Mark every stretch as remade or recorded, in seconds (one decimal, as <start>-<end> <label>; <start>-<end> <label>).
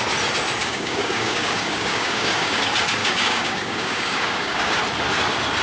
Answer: 0.0-0.6 recorded; 0.6-2.6 remade; 2.6-3.0 recorded; 3.0-4.8 remade; 4.8-5.6 recorded